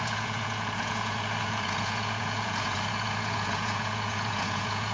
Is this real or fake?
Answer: fake